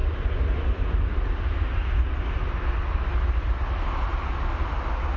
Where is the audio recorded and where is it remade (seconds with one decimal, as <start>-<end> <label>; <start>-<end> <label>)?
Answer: 0.0-5.2 recorded